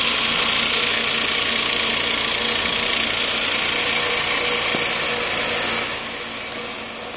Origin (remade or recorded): recorded